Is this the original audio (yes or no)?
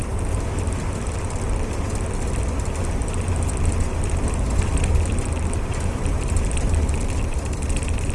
yes